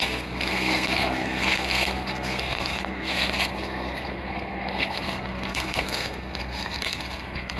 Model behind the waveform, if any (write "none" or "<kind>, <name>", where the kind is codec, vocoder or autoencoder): codec, SNAC